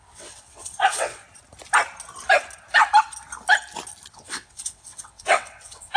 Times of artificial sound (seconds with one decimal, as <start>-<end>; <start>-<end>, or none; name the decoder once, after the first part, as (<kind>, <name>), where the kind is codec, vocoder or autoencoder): 0.0-1.2 (vocoder, WaveNeXt); 4.1-6.0